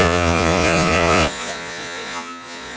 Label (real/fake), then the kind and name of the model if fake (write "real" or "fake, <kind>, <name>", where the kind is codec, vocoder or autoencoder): fake, vocoder, Vocos